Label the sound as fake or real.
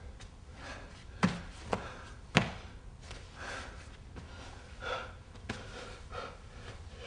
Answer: real